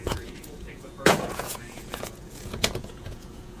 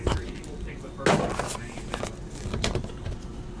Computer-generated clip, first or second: first